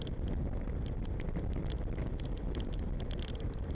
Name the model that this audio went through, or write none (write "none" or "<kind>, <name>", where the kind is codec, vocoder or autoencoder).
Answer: none